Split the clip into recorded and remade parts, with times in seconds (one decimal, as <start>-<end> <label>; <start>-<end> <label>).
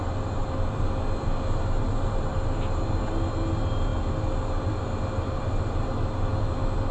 0.0-6.9 recorded